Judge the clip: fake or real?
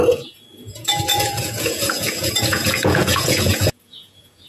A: fake